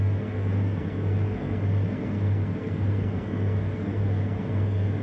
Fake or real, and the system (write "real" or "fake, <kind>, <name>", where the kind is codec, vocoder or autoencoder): fake, codec, SNAC